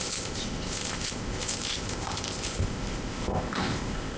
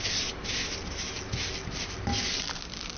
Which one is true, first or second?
second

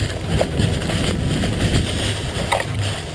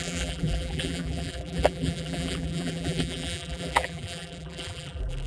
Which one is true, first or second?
first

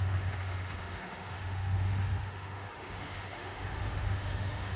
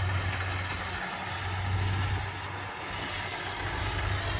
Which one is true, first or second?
second